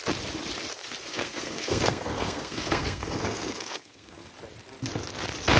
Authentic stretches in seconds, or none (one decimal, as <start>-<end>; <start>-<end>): 0.0-1.1; 4.3-5.6